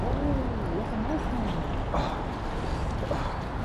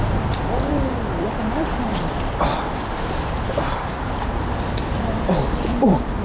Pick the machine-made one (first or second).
second